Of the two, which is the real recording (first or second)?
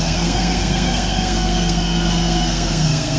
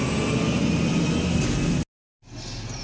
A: second